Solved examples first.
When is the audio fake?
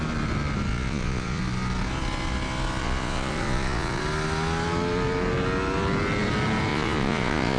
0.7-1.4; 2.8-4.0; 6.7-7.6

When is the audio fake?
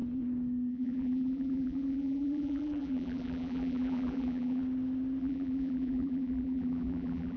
0.7-4.6; 5.2-7.4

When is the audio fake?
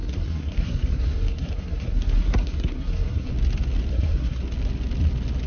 0.0-3.3; 3.9-4.4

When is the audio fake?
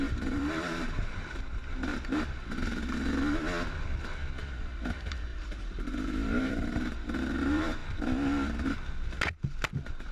0.0-1.9; 4.5-7.8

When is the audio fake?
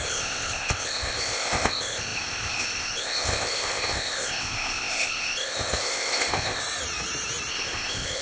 0.0-6.6; 7.5-8.2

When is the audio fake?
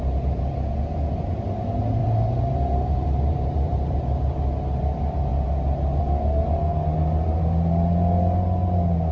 2.0-4.5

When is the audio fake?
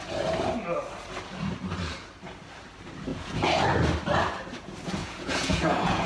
3.1-3.6; 5.0-6.1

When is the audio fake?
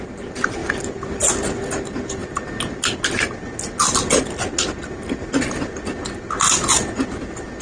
none